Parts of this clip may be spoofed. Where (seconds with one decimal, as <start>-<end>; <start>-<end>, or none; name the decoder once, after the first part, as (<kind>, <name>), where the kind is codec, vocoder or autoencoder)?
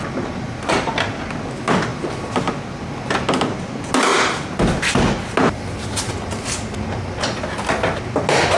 none